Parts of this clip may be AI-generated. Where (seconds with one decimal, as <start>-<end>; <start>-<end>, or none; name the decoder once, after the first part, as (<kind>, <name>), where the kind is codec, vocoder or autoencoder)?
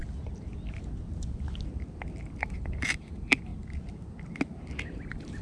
2.4-3.5 (vocoder, BigVGAN v2); 4.8-5.4